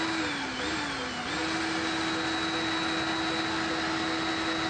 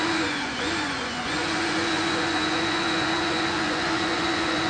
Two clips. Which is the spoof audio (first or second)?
second